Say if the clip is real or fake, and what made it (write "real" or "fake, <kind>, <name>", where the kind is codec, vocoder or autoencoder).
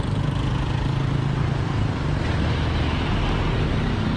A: real